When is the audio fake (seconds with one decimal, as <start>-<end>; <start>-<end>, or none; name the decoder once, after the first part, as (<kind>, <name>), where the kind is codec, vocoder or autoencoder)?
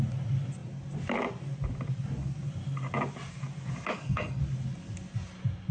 3.9-4.4 (codec, SNAC)